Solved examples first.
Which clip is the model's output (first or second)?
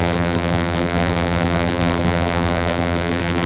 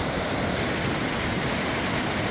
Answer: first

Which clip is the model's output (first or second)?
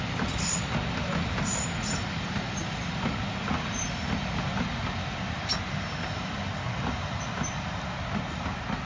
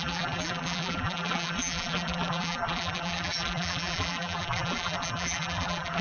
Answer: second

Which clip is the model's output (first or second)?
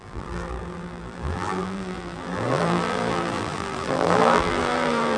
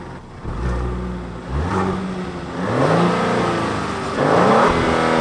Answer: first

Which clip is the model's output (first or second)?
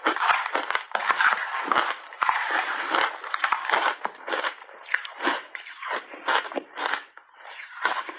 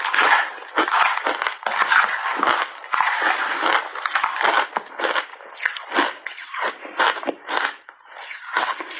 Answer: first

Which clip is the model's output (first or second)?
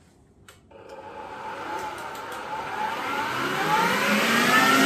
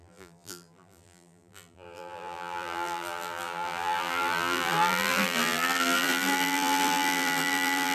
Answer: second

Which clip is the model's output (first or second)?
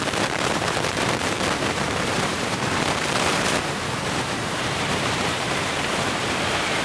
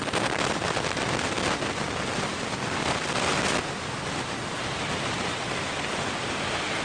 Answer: first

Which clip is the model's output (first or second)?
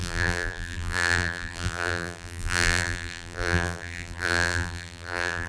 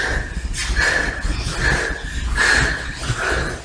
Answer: first